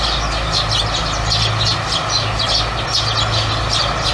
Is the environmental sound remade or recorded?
recorded